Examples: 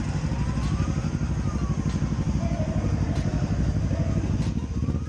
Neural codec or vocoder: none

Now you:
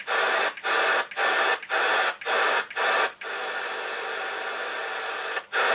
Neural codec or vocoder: none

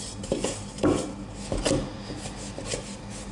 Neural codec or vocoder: none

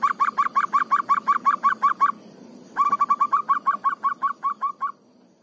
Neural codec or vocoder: none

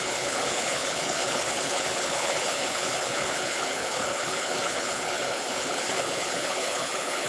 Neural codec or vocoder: codec, HILCodec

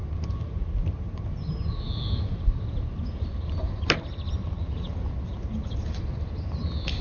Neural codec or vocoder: none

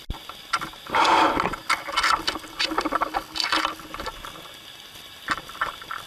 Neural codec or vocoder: none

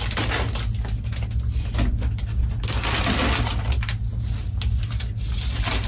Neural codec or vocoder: none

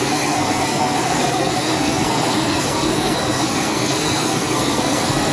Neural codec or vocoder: codec, SNAC